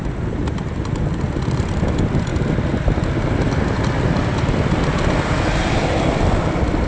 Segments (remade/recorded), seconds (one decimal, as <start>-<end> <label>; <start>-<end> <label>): 0.0-1.1 recorded; 1.1-2.3 remade; 2.3-6.4 recorded; 6.4-6.9 remade